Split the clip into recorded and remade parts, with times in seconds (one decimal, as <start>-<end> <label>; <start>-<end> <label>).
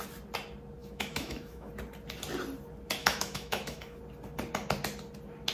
0.0-0.8 recorded; 0.8-1.7 remade; 1.7-3.0 recorded; 3.0-4.0 remade; 4.0-5.5 recorded